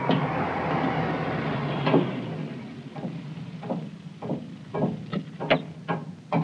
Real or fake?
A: real